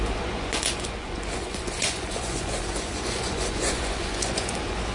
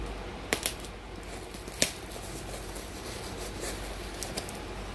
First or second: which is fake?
first